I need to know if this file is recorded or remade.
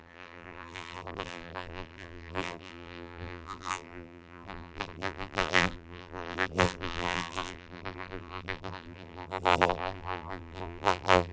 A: remade